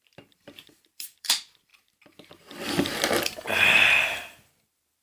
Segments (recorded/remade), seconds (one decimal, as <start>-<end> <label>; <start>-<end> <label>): 0.0-1.7 remade; 1.7-3.2 recorded; 3.2-5.0 remade